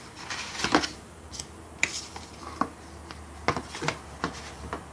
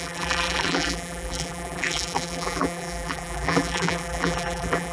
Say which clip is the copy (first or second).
second